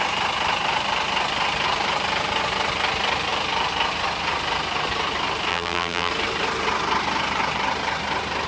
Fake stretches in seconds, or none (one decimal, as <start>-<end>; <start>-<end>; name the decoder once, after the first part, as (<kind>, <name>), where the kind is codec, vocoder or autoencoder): 5.5-6.1 (vocoder, BigVGAN v2)